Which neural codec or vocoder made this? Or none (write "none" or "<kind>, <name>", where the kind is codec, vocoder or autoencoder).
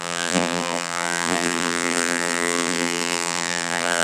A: vocoder, BigVGAN v2